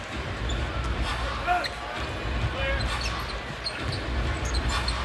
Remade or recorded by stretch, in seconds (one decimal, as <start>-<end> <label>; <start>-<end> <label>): 0.0-5.0 recorded